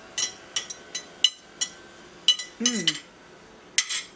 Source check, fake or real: real